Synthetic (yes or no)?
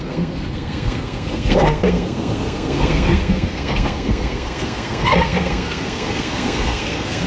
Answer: yes